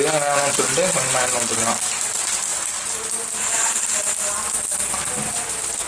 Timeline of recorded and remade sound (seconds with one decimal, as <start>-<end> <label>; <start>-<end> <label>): 0.0-5.9 recorded